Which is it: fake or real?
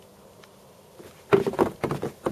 real